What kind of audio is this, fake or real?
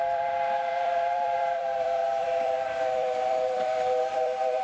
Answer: fake